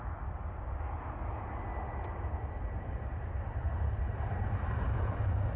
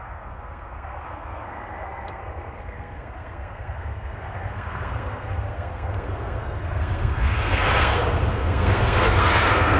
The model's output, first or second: second